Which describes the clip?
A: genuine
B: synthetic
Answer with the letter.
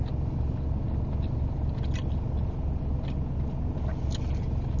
A